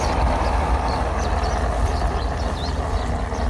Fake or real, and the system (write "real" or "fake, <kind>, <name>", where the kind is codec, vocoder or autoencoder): real